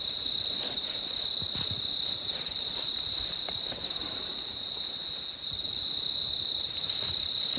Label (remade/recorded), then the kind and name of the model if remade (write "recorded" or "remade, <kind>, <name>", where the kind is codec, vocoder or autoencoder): recorded